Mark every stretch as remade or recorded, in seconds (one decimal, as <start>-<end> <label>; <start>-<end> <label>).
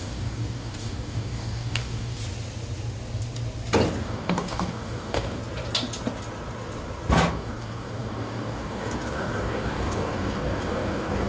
0.0-2.2 remade; 2.2-4.0 recorded; 4.0-5.4 remade; 5.4-7.3 recorded; 7.3-11.3 remade